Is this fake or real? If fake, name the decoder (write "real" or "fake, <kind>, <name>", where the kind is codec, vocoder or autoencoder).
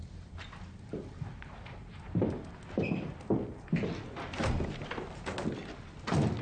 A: real